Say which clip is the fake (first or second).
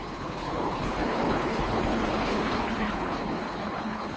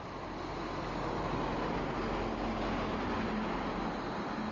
first